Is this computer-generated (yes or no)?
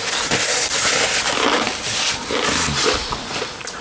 no